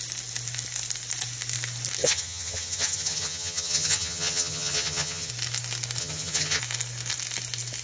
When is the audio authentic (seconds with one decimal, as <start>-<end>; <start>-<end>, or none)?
0.0-2.0; 5.3-6.0; 6.6-7.8